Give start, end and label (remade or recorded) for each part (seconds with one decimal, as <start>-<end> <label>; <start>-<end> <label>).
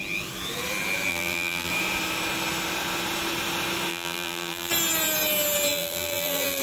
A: 0.0-1.1 recorded; 1.1-1.7 remade; 1.7-3.9 recorded; 3.9-4.7 remade; 4.7-5.7 recorded; 5.7-6.6 remade